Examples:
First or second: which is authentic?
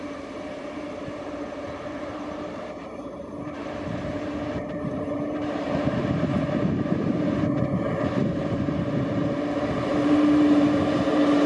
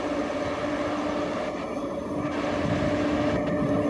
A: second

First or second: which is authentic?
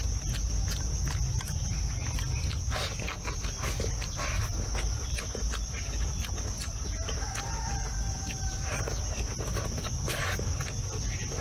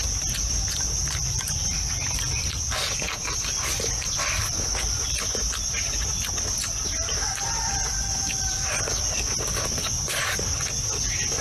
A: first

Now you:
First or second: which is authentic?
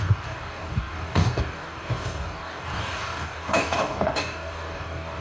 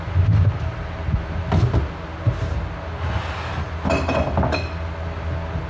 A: second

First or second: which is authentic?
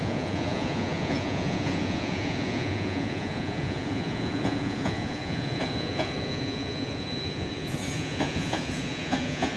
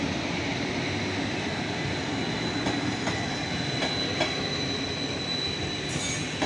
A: second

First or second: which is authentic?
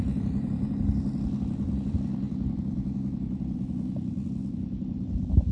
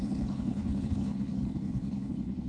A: first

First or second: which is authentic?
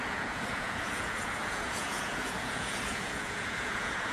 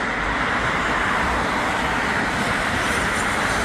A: second